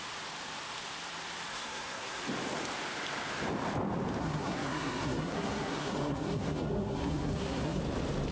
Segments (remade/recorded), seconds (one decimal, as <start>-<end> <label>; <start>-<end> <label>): 0.0-1.5 recorded; 1.5-2.2 remade; 2.2-4.2 recorded; 4.2-7.8 remade; 7.8-8.3 recorded